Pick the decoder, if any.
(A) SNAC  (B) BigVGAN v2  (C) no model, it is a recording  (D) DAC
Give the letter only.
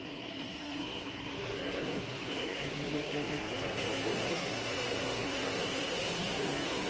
A